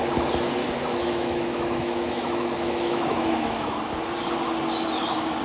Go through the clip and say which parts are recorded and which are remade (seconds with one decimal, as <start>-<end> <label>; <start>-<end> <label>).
0.0-0.6 recorded; 0.6-3.8 remade; 3.8-5.4 recorded